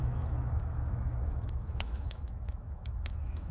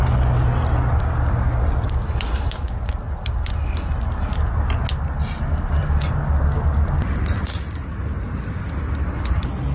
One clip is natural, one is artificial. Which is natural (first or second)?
second